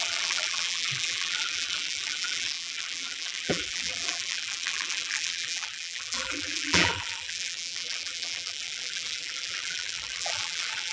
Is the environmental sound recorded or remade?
remade